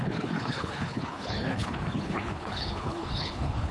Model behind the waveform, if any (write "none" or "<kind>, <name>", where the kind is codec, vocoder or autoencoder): codec, HILCodec